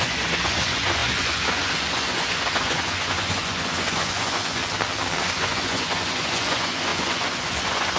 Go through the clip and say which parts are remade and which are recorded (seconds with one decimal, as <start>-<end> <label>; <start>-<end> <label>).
0.0-4.6 remade; 4.6-5.2 recorded; 5.2-8.0 remade